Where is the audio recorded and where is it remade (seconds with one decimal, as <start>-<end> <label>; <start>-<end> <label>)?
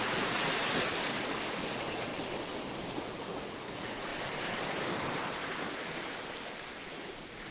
0.0-0.9 remade; 0.9-1.5 recorded; 1.5-2.1 remade; 2.1-3.0 recorded; 3.0-4.1 remade; 4.1-6.9 recorded; 6.9-7.5 remade